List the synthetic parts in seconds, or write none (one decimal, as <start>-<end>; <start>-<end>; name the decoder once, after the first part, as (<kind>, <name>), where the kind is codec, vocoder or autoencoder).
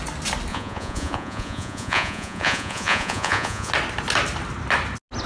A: 0.5-3.7 (vocoder, Vocos)